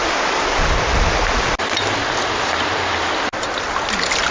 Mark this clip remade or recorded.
recorded